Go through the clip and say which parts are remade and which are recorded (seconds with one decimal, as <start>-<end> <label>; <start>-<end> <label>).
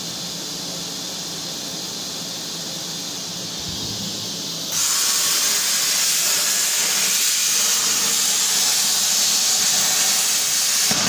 0.0-11.1 recorded